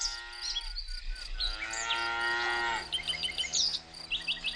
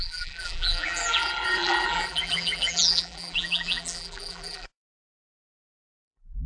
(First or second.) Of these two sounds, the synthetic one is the second